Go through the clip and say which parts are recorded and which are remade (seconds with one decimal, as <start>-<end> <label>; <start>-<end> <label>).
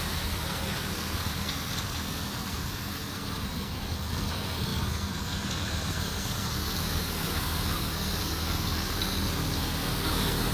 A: 0.0-10.5 remade